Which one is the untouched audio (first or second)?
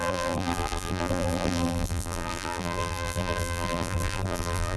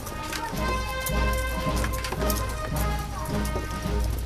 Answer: second